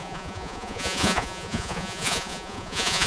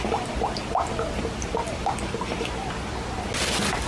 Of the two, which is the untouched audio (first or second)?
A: second